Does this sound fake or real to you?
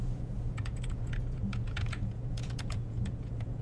fake